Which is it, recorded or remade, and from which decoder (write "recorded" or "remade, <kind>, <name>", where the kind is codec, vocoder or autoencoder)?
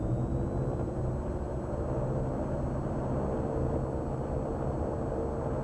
recorded